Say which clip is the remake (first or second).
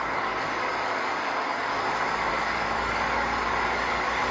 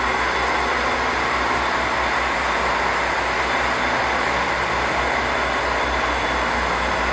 first